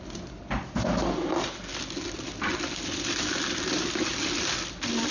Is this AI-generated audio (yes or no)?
no